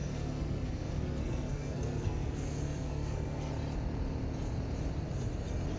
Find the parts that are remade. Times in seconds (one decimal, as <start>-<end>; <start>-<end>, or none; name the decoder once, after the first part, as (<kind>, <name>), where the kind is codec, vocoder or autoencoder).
0.0-3.5 (codec, SNAC)